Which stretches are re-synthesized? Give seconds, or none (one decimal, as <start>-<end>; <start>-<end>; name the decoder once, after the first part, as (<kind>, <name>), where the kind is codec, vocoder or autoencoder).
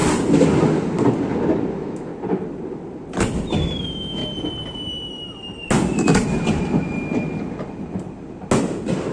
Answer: 1.7-2.1 (autoencoder, DAC-VAE); 3.8-4.2